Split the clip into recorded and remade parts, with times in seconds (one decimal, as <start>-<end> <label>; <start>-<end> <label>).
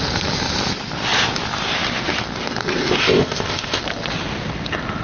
0.0-3.0 recorded; 3.0-3.8 remade; 3.8-5.0 recorded